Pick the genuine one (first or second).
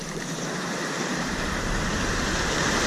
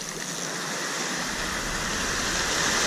second